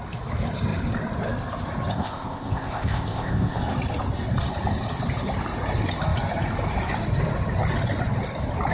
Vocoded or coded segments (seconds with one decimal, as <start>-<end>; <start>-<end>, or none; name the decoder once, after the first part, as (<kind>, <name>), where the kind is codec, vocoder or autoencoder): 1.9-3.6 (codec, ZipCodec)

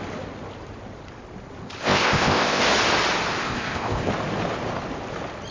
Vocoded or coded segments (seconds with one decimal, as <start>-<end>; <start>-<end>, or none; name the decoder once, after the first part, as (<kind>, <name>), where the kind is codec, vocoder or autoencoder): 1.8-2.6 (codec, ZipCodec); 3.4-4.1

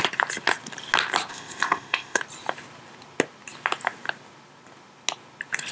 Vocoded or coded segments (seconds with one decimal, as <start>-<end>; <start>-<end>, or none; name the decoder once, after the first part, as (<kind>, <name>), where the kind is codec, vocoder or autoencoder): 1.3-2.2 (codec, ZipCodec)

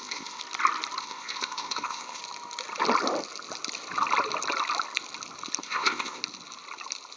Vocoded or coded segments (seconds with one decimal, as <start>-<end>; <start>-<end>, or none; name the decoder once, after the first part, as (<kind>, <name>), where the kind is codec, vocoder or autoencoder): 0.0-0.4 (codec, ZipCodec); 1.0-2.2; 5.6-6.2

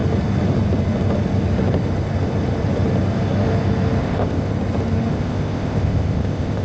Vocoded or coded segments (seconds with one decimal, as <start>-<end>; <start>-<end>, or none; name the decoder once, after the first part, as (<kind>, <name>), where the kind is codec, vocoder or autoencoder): 4.0-4.5 (codec, ZipCodec); 5.1-6.6

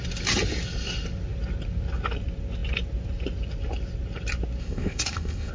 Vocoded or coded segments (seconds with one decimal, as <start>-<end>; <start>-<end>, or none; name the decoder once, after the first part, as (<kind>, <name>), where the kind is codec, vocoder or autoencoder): 4.6-5.5 (codec, ZipCodec)

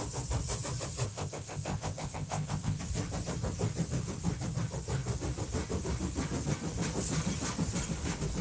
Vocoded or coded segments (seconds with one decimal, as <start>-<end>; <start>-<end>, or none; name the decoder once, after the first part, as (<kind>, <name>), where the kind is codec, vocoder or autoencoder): 1.1-2.8 (codec, ZipCodec)

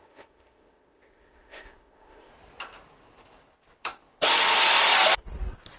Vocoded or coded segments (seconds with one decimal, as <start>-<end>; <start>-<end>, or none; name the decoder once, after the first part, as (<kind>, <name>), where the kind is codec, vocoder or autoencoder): 0.0-2.3 (codec, ZipCodec)